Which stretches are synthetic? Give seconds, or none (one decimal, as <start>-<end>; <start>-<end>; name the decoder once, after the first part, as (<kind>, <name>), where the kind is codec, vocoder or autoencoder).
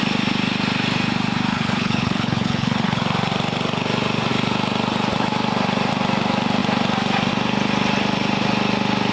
1.5-3.0 (codec, HILCodec)